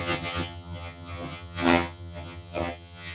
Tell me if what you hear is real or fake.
fake